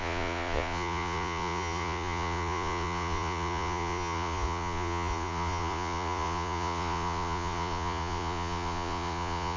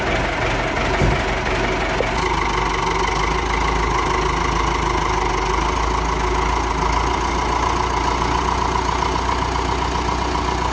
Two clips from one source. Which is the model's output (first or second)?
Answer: first